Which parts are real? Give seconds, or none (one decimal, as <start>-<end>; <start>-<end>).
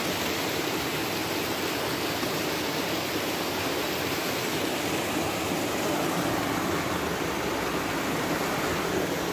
0.0-9.3